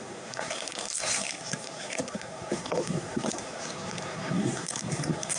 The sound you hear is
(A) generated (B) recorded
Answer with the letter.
A